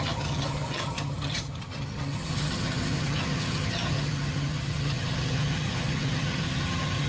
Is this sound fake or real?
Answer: fake